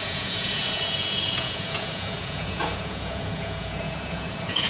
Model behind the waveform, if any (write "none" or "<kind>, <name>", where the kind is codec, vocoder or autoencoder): vocoder, Vocos